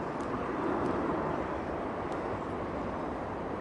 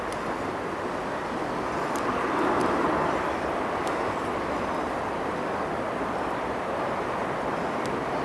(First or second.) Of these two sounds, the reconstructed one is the first